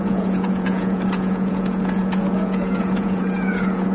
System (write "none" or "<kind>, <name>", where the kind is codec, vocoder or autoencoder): vocoder, Vocos